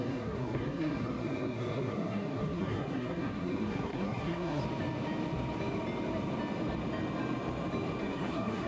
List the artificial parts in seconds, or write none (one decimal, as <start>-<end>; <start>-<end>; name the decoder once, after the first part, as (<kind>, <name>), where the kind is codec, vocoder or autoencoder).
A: 0.0-4.6 (codec, SNAC); 8.0-8.7